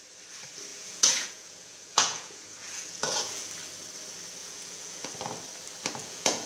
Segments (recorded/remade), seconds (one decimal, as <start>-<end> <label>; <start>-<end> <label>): 0.0-0.7 recorded; 0.7-3.5 remade; 3.5-4.4 recorded; 4.4-5.1 remade; 5.1-6.0 recorded; 6.0-6.5 remade